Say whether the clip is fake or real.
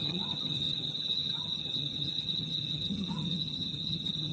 fake